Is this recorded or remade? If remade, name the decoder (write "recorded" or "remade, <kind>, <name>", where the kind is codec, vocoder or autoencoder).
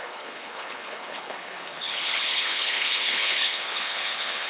remade, codec, HILCodec